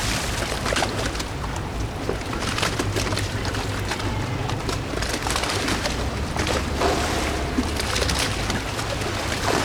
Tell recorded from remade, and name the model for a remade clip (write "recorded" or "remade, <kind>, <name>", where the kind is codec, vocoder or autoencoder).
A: remade, vocoder, BigVGAN v2